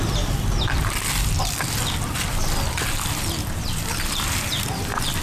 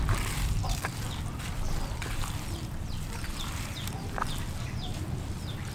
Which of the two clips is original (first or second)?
first